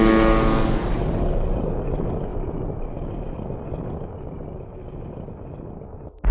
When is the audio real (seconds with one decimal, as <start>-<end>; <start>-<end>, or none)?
0.0-6.3